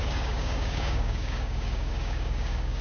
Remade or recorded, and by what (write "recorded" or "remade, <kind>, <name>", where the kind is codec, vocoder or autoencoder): remade, codec, DAC